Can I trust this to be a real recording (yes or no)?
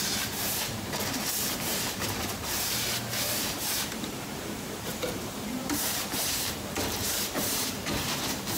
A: no